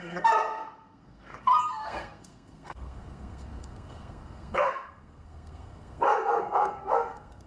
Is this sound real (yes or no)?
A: no